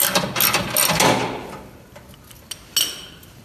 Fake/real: real